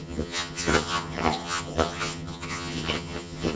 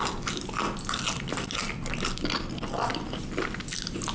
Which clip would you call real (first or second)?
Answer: second